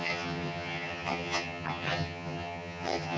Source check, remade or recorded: remade